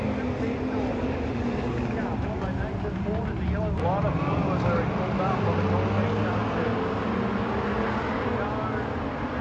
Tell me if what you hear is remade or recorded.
recorded